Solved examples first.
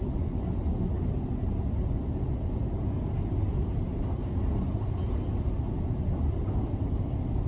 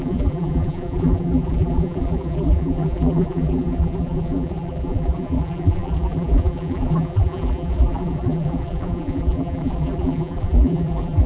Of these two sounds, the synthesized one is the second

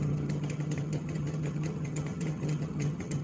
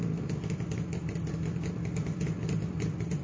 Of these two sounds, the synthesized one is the first